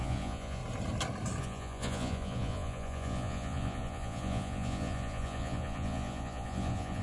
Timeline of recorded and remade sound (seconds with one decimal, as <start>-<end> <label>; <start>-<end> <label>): 0.0-0.6 remade; 0.6-1.4 recorded; 1.4-7.0 remade